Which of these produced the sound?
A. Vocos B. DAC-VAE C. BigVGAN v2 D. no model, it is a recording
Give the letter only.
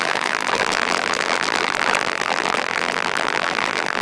C